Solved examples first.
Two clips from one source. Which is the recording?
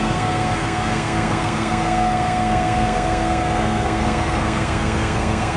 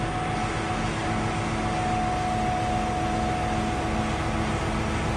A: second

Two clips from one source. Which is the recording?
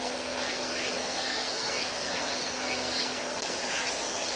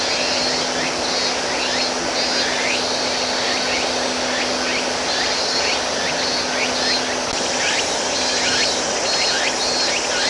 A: second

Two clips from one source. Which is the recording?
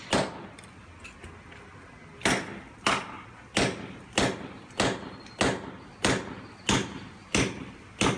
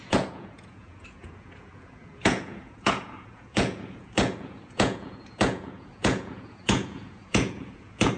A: first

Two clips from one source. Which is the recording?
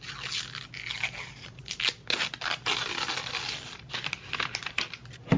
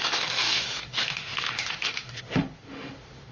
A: first